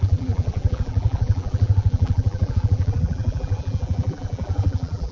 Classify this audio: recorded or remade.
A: remade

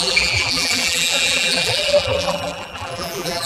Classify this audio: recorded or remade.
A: remade